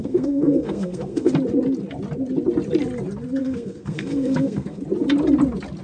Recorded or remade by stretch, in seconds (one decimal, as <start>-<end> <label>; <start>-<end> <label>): 0.0-1.3 remade; 1.3-3.4 recorded; 3.4-4.8 remade; 4.8-5.8 recorded